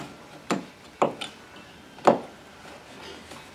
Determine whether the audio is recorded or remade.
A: recorded